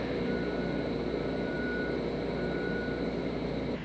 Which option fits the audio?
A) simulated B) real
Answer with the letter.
A